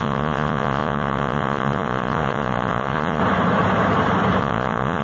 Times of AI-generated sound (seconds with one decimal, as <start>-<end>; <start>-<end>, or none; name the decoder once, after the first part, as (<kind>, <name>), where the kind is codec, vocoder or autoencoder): 0.0-3.2 (vocoder, Vocos); 4.4-5.0

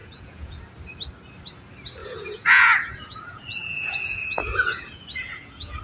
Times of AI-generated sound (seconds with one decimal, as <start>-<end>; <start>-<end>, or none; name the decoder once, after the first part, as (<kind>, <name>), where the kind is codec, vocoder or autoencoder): 0.0-0.6 (vocoder, Vocos); 2.0-5.8

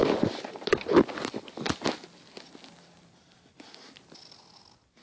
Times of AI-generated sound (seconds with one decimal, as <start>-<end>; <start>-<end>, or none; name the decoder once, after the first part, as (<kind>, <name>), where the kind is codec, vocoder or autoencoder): none

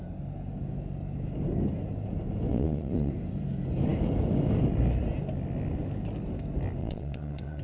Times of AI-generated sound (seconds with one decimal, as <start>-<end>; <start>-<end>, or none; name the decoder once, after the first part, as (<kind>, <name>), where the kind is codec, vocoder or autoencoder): 2.5-3.1 (vocoder, Vocos); 6.8-7.6

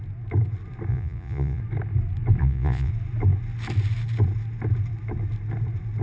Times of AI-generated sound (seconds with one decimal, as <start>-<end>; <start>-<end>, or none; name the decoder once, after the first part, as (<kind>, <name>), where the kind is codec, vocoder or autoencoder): 0.9-1.6 (vocoder, Vocos); 2.4-2.9